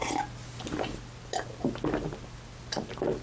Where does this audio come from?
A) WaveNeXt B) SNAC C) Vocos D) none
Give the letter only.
D